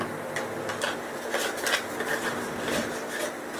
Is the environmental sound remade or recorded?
recorded